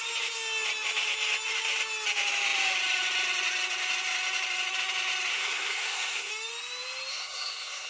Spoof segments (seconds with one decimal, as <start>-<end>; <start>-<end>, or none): 5.3-6.3; 7.1-7.9